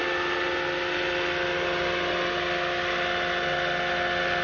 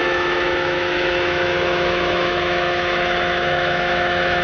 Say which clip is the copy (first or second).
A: second